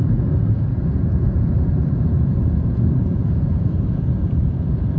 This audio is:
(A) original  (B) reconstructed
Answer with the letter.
B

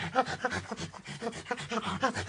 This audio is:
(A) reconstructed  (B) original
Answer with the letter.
B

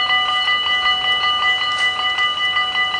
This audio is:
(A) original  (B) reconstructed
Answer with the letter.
A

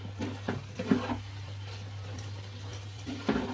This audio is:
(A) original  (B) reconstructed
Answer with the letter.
A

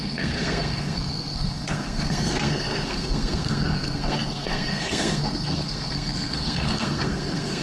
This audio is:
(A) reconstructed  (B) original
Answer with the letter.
A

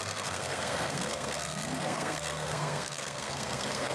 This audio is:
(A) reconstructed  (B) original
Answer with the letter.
A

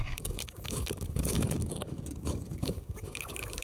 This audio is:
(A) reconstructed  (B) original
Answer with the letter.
A